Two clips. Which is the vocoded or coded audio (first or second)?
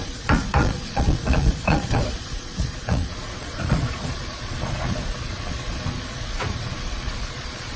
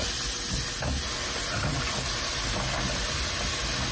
first